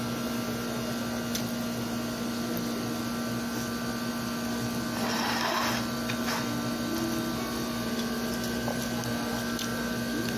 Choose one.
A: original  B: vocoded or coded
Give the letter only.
A